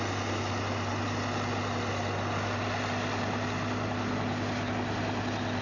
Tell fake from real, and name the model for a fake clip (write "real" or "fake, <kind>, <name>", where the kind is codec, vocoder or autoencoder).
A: real